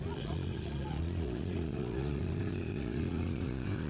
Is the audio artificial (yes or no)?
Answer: yes